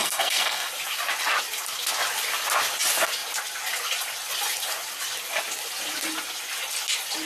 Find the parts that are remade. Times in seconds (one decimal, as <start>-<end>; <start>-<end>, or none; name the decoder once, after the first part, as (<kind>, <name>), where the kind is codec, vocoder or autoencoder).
0.0-0.7 (codec, SNAC)